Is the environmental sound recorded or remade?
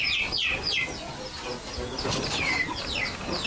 recorded